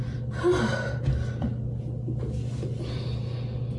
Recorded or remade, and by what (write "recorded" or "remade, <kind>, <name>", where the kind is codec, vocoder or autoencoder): recorded